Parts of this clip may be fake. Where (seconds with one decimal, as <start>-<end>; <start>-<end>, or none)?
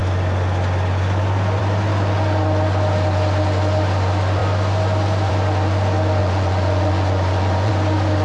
6.2-7.7